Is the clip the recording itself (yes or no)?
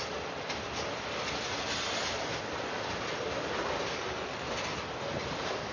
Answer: yes